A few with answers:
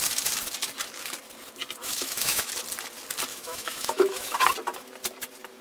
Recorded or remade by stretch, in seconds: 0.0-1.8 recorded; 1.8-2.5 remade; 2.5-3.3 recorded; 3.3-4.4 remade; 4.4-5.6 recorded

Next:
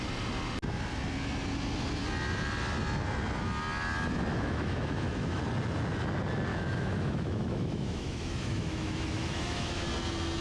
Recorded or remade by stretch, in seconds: 0.0-4.3 recorded; 4.3-5.4 remade; 5.4-6.5 recorded; 6.5-9.9 remade; 9.9-10.4 recorded

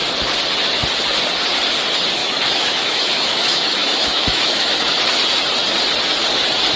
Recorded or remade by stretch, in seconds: 0.0-2.2 recorded; 2.2-5.0 remade; 5.0-6.8 recorded

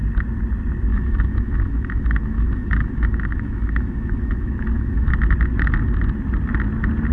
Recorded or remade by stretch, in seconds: 0.0-0.9 recorded; 0.9-5.1 remade; 5.1-7.1 recorded